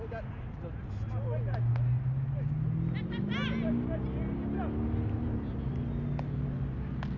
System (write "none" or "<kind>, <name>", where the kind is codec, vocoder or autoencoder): none